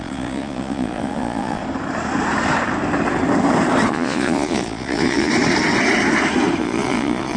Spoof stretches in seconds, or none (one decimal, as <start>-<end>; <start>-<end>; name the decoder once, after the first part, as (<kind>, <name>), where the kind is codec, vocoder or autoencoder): 0.0-1.6 (vocoder, Vocos); 3.9-5.3; 6.6-7.4